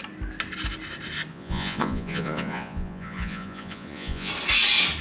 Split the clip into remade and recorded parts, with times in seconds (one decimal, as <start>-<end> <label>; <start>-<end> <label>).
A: 0.0-1.3 recorded; 1.3-4.3 remade; 4.3-5.0 recorded